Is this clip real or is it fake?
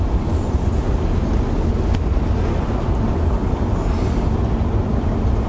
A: real